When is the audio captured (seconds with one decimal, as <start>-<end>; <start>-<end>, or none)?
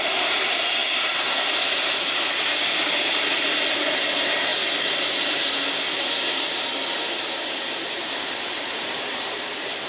0.8-1.4; 4.5-8.7